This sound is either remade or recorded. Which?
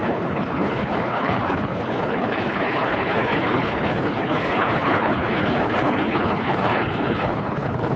remade